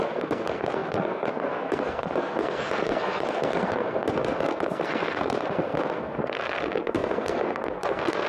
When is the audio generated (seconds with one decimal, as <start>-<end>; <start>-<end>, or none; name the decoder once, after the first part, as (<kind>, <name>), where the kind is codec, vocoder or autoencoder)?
0.0-8.3 (codec, SNAC)